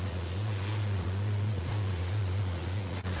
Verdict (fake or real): fake